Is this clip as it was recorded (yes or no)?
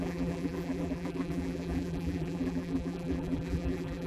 no